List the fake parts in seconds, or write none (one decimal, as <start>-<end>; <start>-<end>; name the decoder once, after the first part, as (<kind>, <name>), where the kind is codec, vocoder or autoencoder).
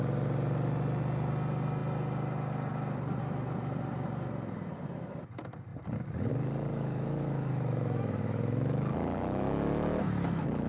6.7-10.7 (autoencoder, DAC-VAE)